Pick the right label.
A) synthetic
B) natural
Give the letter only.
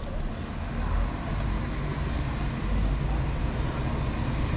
B